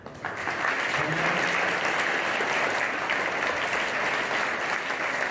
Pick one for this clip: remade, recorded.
recorded